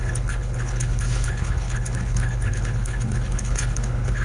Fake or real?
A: fake